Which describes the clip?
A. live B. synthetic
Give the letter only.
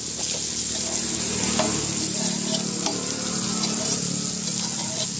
A